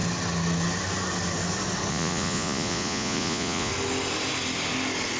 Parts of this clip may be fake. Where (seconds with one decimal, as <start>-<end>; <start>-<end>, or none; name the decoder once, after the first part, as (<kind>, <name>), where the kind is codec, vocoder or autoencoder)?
1.9-3.7 (vocoder, Vocos)